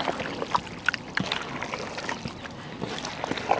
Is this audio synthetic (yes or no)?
no